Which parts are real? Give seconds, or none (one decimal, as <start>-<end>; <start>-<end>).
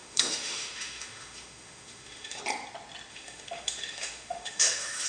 2.4-3.1